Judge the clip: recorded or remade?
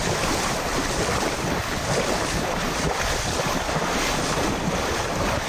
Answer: remade